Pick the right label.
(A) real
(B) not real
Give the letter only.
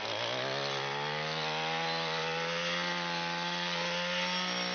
A